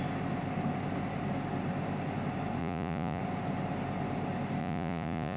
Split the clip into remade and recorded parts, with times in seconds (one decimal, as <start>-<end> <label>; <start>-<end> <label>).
0.0-2.6 recorded; 2.6-3.2 remade; 3.2-4.6 recorded; 4.6-5.4 remade